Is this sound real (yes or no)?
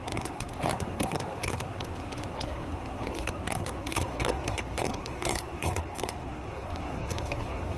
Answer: no